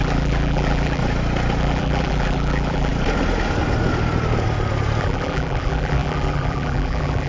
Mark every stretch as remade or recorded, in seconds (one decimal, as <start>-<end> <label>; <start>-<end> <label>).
0.0-1.0 remade; 1.0-1.6 recorded; 1.6-2.9 remade; 2.9-5.0 recorded; 5.0-7.3 remade